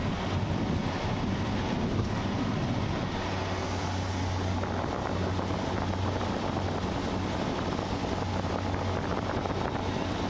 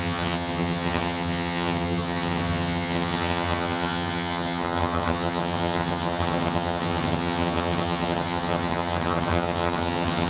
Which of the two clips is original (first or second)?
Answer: first